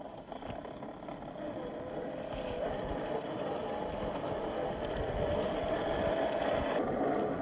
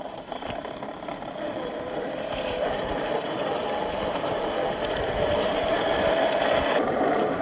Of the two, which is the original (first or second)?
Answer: first